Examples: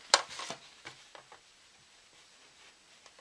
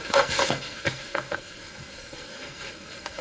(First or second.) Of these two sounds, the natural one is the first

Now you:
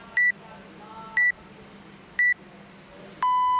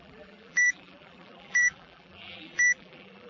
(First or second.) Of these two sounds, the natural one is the first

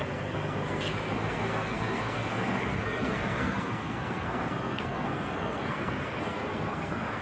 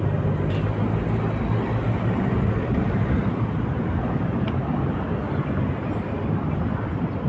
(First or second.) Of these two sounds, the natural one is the second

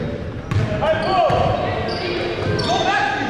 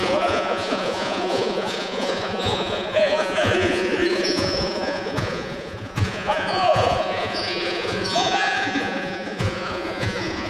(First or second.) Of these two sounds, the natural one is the first